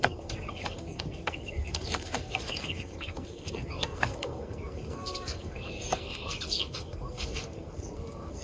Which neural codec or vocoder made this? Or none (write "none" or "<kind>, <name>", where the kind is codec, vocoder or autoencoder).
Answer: codec, SNAC